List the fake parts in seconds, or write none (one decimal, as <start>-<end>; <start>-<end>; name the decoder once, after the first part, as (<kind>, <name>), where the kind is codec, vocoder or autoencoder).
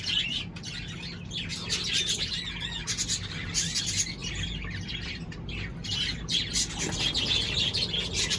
1.5-2.4 (vocoder, BigVGAN v2); 2.8-3.8; 4.2-8.4